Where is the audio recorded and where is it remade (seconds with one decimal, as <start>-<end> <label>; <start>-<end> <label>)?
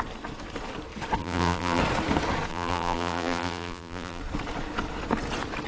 0.0-1.2 recorded; 1.2-1.8 remade; 1.8-2.5 recorded; 2.5-4.2 remade; 4.2-5.7 recorded